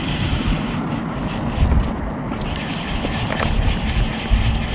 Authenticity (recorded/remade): recorded